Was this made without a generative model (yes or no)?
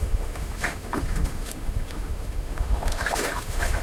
no